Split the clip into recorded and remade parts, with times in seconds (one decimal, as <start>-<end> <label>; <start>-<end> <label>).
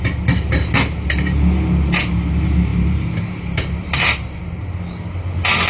0.0-2.7 recorded; 2.7-4.6 remade; 4.6-5.7 recorded